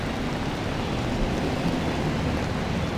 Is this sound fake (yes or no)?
no